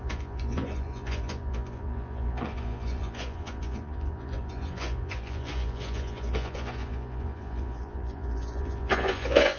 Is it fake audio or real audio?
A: fake